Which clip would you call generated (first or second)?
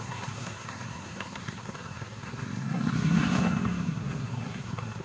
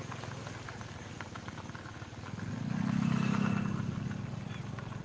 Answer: first